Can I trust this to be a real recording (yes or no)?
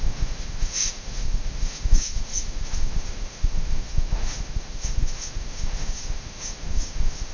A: no